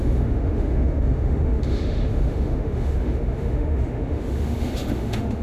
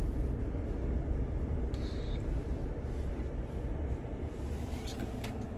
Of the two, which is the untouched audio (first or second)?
second